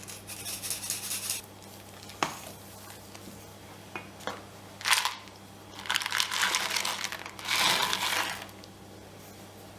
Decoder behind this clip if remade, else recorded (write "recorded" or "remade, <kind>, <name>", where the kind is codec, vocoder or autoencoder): recorded